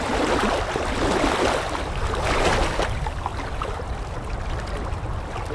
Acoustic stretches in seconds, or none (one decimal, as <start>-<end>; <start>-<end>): 0.0-5.5